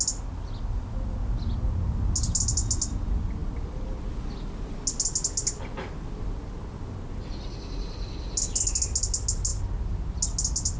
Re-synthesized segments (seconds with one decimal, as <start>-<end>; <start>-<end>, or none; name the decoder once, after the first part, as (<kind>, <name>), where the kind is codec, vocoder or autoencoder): none